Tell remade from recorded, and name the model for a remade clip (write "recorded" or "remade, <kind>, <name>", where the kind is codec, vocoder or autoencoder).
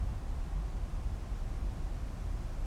recorded